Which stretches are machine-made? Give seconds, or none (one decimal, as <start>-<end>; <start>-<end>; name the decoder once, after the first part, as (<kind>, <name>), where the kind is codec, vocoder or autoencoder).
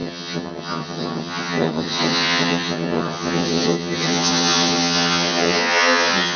0.0-6.4 (vocoder, HiFi-GAN)